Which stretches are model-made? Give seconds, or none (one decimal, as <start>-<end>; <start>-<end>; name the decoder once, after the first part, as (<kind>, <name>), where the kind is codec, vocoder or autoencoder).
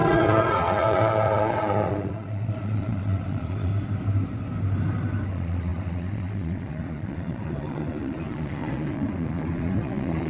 0.0-3.7 (vocoder, Vocos); 5.3-10.3